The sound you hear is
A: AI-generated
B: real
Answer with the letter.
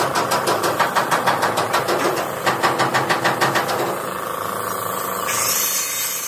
B